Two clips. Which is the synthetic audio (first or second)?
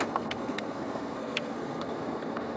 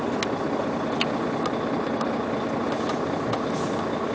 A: first